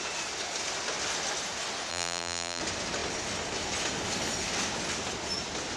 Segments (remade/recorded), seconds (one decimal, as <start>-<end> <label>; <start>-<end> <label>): 0.0-1.9 recorded; 1.9-2.6 remade; 2.6-5.8 recorded